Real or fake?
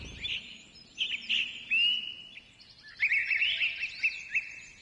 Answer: real